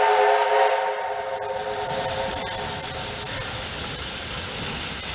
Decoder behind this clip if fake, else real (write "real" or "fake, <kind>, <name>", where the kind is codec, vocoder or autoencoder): real